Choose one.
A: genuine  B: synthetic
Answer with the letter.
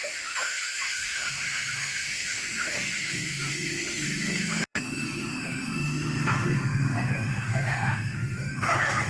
B